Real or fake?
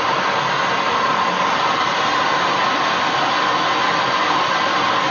real